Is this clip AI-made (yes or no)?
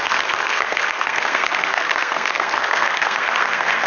yes